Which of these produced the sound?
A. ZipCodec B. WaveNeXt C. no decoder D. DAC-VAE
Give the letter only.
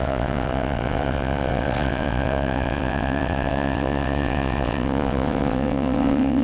B